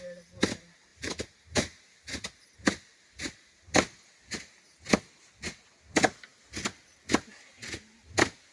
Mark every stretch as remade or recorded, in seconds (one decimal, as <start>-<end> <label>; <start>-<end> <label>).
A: 0.0-0.9 recorded; 0.9-2.0 remade; 2.0-8.5 recorded